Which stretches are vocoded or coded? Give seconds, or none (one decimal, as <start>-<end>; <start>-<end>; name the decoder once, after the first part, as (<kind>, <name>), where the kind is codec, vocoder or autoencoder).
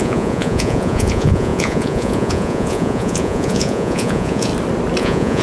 0.0-4.5 (vocoder, Vocos); 5.0-5.4